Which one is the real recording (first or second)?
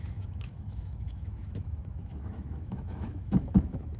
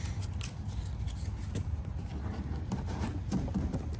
second